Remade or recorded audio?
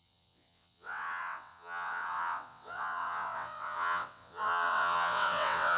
remade